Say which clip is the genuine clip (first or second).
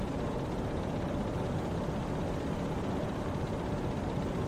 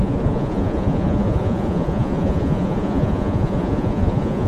first